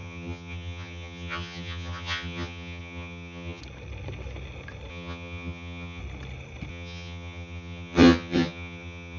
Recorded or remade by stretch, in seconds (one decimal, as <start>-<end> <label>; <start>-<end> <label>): 0.0-3.6 remade; 3.6-4.9 recorded; 4.9-6.0 remade; 6.0-6.7 recorded; 6.7-9.2 remade